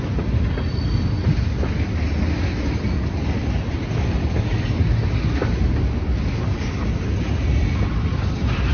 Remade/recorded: recorded